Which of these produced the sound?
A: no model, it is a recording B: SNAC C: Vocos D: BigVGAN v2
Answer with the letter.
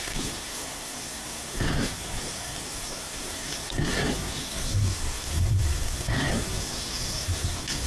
B